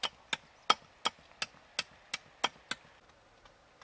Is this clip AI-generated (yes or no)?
no